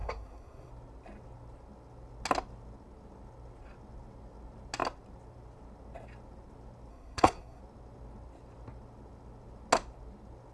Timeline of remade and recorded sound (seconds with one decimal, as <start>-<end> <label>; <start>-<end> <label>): 0.0-0.7 remade; 0.7-6.9 recorded; 6.9-7.6 remade; 7.6-10.5 recorded